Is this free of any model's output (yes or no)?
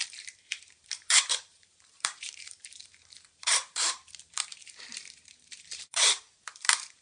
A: no